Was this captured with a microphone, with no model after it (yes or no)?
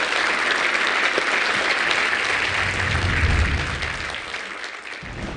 yes